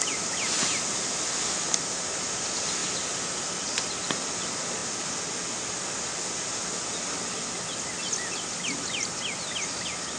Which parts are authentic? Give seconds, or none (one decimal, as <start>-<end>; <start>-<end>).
0.0-10.2